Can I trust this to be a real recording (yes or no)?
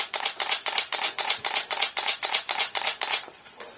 no